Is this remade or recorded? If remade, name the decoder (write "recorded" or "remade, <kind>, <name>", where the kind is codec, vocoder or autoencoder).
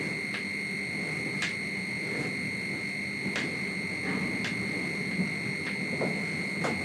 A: recorded